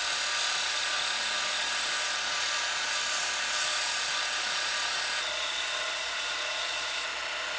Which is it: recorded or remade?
recorded